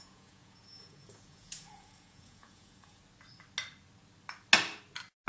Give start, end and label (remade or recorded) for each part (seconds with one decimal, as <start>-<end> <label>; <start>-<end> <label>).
0.0-3.0 remade; 3.0-5.3 recorded